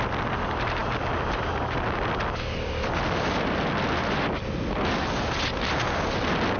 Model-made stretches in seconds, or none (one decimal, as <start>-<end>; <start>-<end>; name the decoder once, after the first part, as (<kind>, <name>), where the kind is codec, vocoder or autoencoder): none